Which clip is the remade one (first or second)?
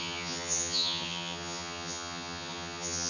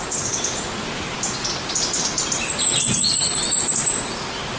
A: first